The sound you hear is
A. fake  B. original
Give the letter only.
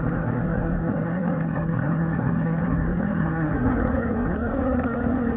A